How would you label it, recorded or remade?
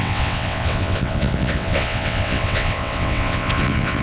remade